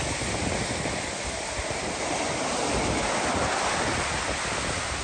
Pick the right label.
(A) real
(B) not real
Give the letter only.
A